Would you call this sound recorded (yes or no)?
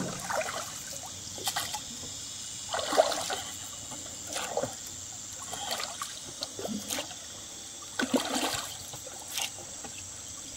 yes